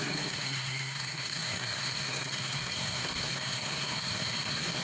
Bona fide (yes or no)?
no